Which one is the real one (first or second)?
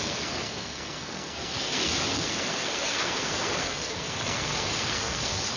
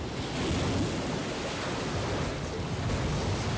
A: second